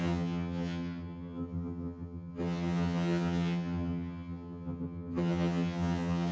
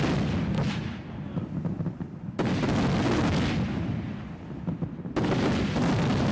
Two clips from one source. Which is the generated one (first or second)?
first